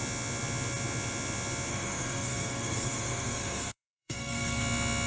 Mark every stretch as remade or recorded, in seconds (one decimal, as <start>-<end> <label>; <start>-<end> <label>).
0.0-1.7 recorded; 1.7-4.6 remade; 4.6-5.1 recorded